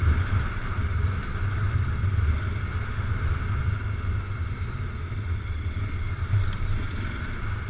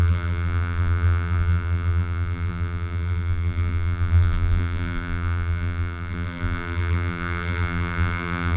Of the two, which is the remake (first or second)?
second